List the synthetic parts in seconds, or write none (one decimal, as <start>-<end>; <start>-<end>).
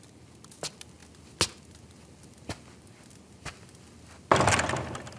none